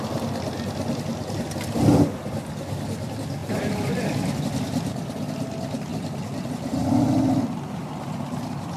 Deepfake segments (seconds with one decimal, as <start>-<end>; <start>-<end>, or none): 3.4-4.4; 5.9-6.5